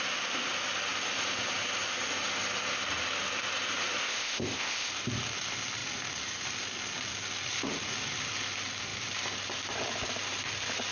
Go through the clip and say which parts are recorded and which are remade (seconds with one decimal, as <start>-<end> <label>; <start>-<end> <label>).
0.0-4.0 recorded; 4.0-4.9 remade; 4.9-10.9 recorded

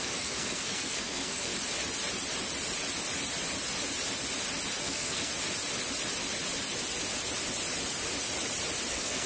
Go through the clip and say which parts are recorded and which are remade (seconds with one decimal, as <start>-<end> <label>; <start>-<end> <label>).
0.0-1.5 remade; 1.5-4.8 recorded; 4.8-5.3 remade; 5.3-8.9 recorded; 8.9-9.3 remade

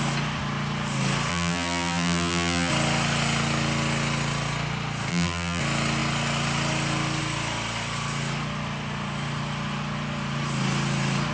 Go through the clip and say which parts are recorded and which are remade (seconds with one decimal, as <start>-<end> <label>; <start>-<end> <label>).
0.0-1.3 recorded; 1.3-2.7 remade; 2.7-5.1 recorded; 5.1-5.6 remade; 5.6-11.3 recorded

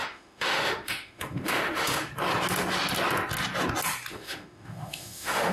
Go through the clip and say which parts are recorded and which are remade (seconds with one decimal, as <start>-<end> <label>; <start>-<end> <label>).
0.0-2.1 remade; 2.1-4.1 recorded; 4.1-5.5 remade

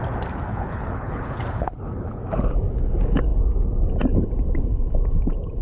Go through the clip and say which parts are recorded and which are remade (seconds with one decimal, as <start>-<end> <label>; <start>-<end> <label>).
0.0-0.5 recorded; 0.5-2.2 remade; 2.2-5.6 recorded